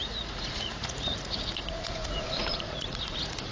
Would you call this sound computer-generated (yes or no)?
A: yes